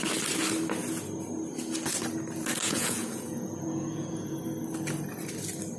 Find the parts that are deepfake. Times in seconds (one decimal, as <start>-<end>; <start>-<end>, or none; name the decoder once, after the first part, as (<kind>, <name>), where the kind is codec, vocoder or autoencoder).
2.6-4.4 (vocoder, Vocos)